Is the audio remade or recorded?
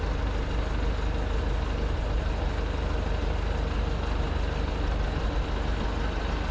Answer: recorded